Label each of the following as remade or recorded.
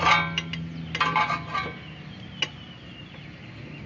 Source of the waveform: recorded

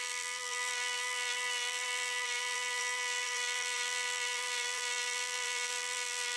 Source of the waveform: remade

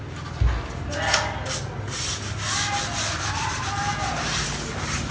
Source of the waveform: recorded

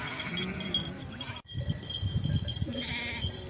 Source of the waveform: remade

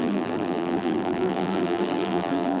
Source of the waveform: remade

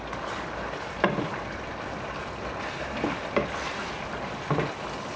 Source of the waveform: recorded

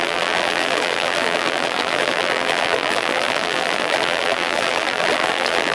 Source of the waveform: remade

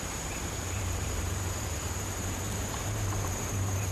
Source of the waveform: remade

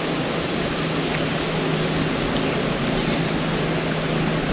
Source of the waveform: recorded